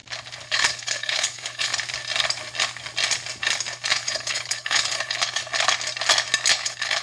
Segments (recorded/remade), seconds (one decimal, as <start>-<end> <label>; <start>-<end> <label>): 0.0-0.5 recorded; 0.5-1.7 remade; 1.7-3.9 recorded; 3.9-5.4 remade; 5.4-6.5 recorded; 6.5-7.0 remade